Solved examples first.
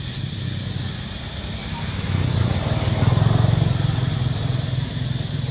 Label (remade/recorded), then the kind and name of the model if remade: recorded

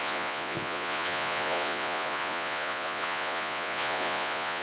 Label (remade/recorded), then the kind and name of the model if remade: remade, vocoder, Vocos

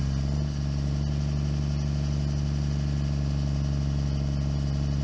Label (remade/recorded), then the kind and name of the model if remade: recorded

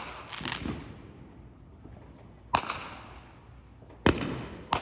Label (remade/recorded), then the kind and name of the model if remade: recorded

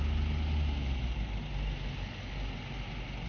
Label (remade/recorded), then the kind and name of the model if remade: recorded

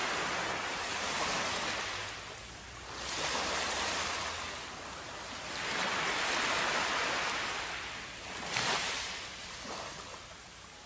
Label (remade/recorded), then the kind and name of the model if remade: recorded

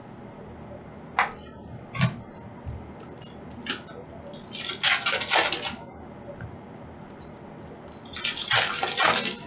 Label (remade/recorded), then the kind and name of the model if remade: recorded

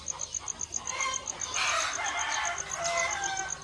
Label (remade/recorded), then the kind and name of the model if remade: recorded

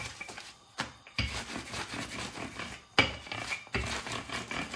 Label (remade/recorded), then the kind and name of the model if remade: recorded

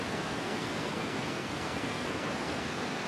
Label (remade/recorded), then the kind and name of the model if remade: remade, codec, SNAC